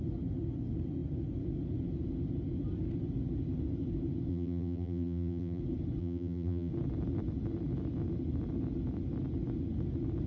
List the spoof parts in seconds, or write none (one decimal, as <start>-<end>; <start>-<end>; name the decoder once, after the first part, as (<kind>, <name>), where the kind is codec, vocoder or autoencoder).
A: 4.3-5.6 (vocoder, BigVGAN v2); 6.0-6.7